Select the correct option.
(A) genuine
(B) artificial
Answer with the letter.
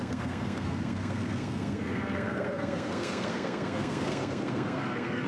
B